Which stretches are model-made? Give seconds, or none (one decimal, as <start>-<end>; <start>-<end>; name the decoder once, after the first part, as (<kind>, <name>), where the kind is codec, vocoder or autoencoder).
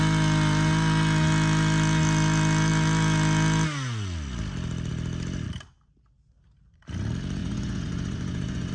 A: 7.4-8.7 (vocoder, Vocos)